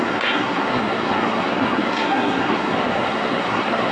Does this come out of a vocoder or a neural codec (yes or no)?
yes